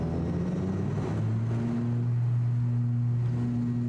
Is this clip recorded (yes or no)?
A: yes